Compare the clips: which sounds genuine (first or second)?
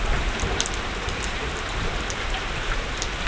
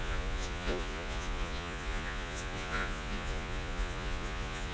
first